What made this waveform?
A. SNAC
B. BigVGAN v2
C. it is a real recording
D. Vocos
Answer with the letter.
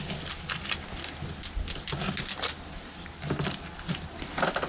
C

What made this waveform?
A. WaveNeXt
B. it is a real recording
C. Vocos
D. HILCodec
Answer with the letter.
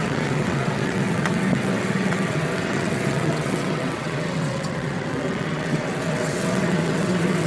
A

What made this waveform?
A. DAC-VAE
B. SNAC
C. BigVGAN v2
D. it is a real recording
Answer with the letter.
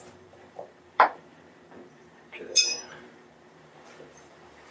C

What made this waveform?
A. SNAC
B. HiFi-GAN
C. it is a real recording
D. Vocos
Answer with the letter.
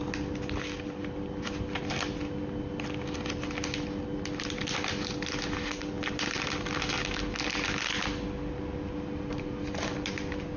C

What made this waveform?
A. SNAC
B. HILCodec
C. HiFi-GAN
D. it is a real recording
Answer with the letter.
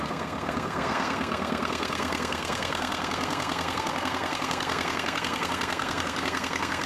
A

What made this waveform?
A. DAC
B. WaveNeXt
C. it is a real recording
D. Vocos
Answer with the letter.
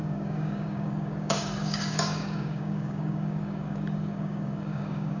A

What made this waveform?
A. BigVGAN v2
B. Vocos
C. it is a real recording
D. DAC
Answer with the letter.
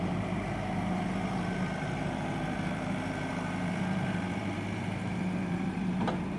A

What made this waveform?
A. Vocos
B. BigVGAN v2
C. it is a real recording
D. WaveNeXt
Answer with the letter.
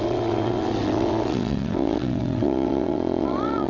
D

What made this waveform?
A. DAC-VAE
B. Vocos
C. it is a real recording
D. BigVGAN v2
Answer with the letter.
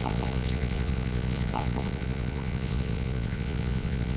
B